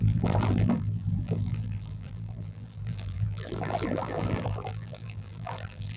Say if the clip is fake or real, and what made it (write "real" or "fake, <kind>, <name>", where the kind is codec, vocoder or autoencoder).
fake, vocoder, BigVGAN v2